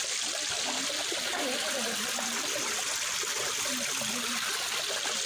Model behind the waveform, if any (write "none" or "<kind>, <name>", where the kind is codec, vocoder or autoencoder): none